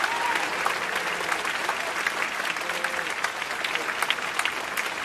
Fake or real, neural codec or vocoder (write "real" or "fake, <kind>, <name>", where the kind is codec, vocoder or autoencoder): real